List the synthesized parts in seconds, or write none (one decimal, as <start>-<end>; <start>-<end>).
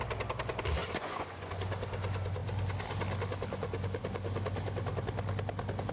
0.8-1.5